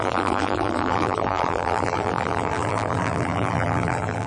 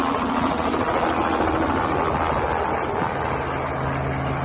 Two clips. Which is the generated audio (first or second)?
first